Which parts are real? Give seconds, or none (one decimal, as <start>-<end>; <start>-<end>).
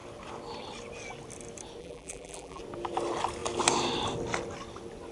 0.0-1.8; 2.6-5.1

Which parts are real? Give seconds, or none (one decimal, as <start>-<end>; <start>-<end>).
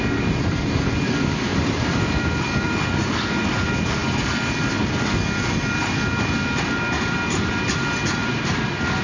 0.0-1.5; 2.9-8.2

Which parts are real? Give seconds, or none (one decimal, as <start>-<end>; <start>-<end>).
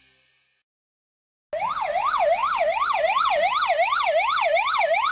0.0-5.1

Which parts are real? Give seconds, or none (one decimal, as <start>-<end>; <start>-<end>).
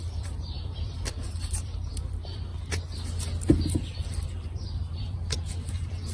2.5-3.8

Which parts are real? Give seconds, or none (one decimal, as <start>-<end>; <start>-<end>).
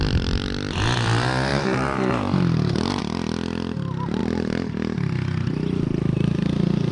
0.0-1.5; 3.0-6.9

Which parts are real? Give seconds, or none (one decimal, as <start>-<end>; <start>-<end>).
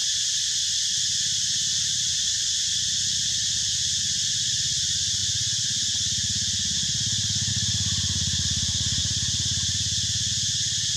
2.4-9.0; 10.3-11.0